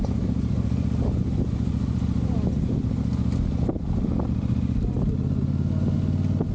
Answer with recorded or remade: recorded